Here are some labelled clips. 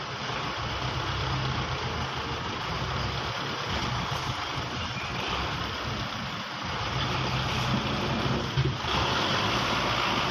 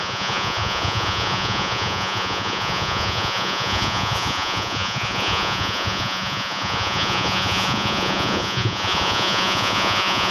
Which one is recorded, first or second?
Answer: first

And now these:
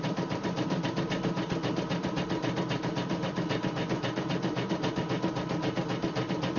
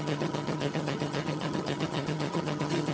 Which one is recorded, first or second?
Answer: first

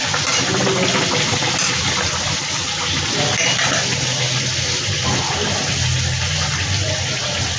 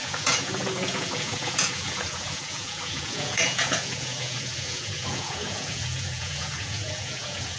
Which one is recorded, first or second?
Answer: first